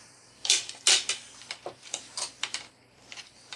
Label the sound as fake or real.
fake